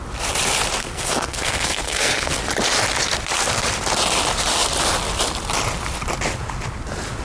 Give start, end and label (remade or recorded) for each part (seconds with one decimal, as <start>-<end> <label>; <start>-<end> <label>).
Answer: 0.0-0.8 recorded; 0.8-2.4 remade; 2.4-7.2 recorded